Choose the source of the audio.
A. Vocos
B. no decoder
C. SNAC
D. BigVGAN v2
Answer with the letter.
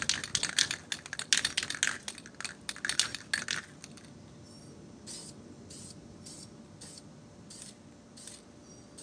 B